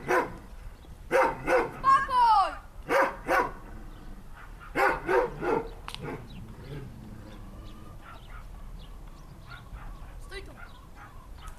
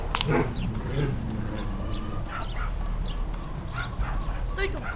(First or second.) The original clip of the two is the second